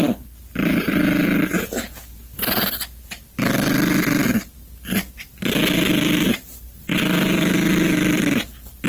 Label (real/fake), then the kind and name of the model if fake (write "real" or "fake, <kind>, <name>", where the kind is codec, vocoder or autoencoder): real